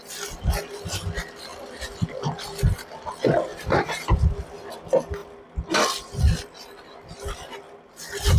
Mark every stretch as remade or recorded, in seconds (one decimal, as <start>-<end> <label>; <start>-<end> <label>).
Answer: 0.0-3.5 recorded; 3.5-4.1 remade; 4.1-8.4 recorded